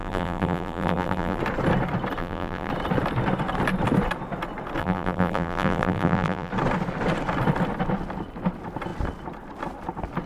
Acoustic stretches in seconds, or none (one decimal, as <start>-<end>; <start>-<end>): 1.4-2.2; 2.7-4.8; 6.5-10.3